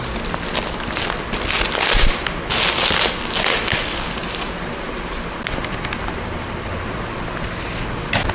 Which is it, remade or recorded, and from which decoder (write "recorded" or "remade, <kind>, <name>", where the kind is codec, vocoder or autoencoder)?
recorded